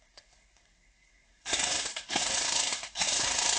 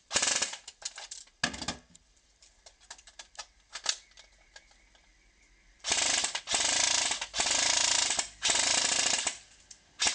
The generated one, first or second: first